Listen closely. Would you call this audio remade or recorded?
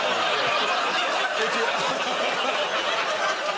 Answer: recorded